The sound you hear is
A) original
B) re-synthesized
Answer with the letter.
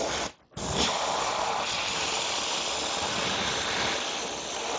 A